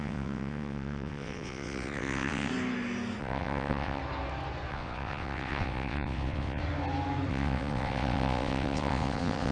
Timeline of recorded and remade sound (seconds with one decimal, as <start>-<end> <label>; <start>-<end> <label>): 0.0-2.5 remade; 2.5-3.2 recorded; 3.2-4.0 remade; 4.0-4.7 recorded; 4.7-6.6 remade; 6.6-7.3 recorded; 7.3-9.5 remade

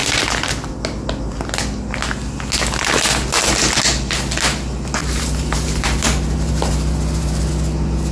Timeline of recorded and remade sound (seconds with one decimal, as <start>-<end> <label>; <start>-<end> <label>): 0.0-0.7 remade; 0.7-5.0 recorded; 5.0-7.5 remade; 7.5-8.1 recorded

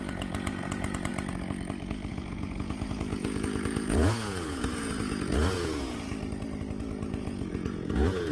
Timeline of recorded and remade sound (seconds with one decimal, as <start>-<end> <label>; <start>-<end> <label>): 0.0-1.1 remade; 1.1-2.1 recorded; 2.1-6.1 remade; 6.1-7.1 recorded; 7.1-8.3 remade

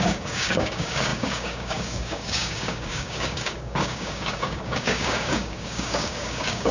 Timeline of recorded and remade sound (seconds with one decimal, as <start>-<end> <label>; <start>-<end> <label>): 0.0-6.7 remade

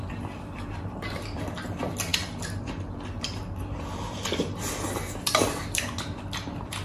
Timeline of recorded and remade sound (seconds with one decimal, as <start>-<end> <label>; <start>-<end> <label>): 0.0-6.8 recorded